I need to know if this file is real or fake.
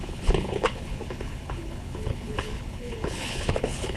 fake